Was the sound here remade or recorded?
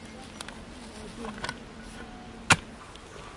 recorded